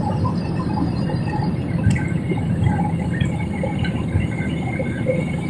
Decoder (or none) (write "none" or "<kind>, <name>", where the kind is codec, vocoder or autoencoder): none